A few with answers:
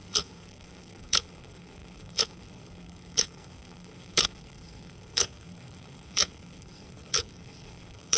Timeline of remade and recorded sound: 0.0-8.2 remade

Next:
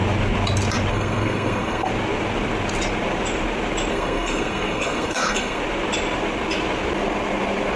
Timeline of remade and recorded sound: 0.0-0.9 recorded; 0.9-1.9 remade; 1.9-3.9 recorded; 3.9-5.6 remade; 5.6-7.8 recorded

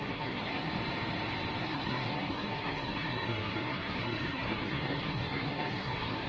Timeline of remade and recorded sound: 0.0-0.7 remade; 0.7-1.6 recorded; 1.6-6.3 remade

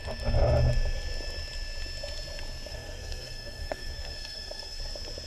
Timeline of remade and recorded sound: 0.0-2.7 recorded; 2.7-4.8 remade; 4.8-5.3 recorded

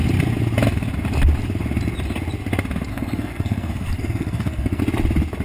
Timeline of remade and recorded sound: 0.0-2.9 recorded; 2.9-4.8 remade; 4.8-5.4 recorded

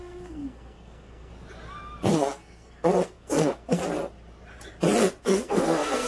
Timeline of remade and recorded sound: 0.0-1.3 remade; 1.3-2.1 recorded; 2.1-3.8 remade; 3.8-5.2 recorded; 5.2-6.1 remade

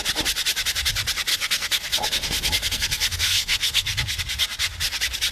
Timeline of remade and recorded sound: 0.0-1.3 recorded; 1.3-4.2 remade; 4.2-5.3 recorded